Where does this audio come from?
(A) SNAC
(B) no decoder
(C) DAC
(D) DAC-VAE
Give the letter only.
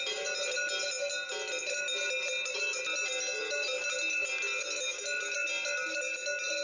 B